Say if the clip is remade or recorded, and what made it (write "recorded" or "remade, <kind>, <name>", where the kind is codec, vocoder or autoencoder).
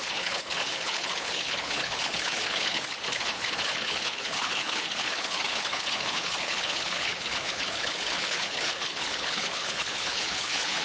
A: remade, codec, HILCodec